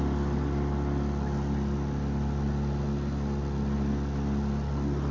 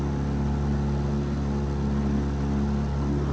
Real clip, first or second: first